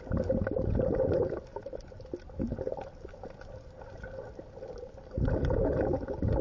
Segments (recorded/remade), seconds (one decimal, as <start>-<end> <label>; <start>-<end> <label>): 0.0-6.4 recorded